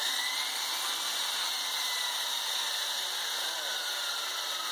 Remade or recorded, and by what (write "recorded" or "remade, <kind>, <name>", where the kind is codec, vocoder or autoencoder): recorded